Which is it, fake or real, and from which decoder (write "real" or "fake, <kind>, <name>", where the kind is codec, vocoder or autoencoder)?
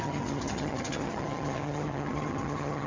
fake, vocoder, HiFi-GAN